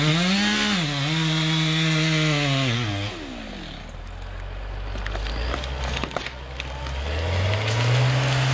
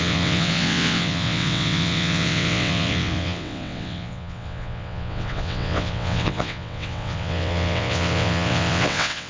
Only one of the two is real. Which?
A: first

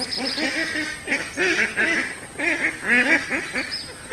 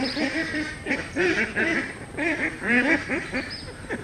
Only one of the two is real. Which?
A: first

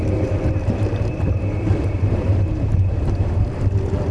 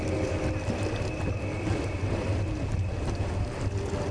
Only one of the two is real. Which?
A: second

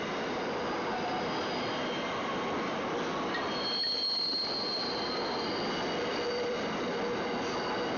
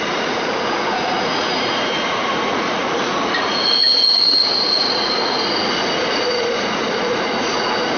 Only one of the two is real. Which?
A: first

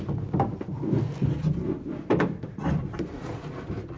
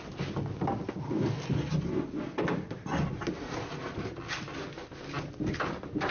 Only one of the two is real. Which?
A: second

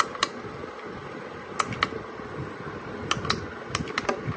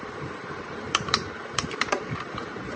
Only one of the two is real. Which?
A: first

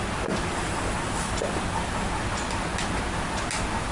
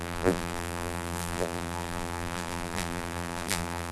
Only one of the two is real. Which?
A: first